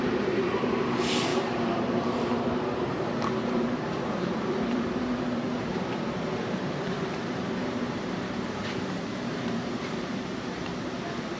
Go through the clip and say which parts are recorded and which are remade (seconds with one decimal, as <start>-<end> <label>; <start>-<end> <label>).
0.0-11.4 remade